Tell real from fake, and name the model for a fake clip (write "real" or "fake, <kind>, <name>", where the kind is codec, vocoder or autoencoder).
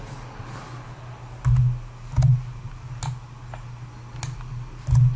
real